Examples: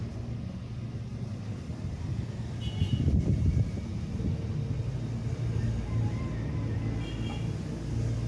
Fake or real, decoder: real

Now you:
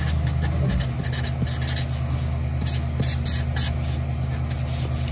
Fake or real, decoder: real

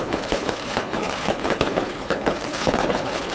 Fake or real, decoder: fake, codec, HILCodec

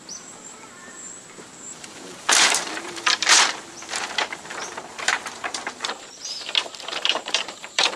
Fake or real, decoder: fake, vocoder, BigVGAN v2